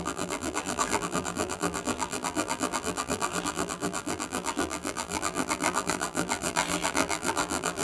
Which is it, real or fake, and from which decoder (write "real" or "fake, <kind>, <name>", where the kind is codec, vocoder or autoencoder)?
fake, vocoder, BigVGAN v2